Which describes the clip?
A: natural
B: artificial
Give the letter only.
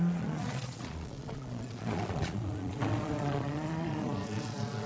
B